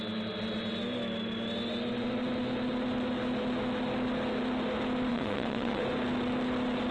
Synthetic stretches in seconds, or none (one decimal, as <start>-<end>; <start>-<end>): 5.1-5.8